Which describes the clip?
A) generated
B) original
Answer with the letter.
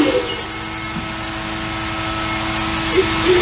B